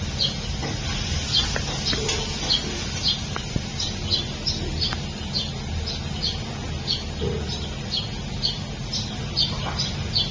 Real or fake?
real